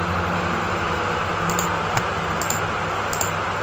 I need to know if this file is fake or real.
real